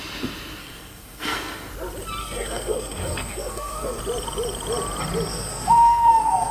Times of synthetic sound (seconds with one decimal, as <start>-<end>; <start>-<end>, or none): 0.6-1.7; 2.2-4.0; 5.3-6.5